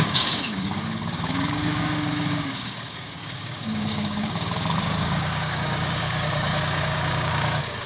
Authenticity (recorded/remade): remade